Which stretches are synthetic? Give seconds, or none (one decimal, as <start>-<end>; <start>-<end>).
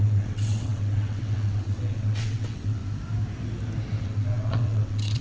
0.0-2.8; 4.0-5.2